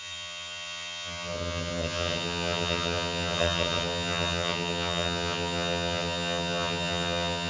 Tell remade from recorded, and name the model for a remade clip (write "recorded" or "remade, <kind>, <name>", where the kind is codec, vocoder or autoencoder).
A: remade, vocoder, HiFi-GAN